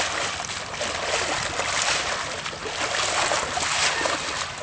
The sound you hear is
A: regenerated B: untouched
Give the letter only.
B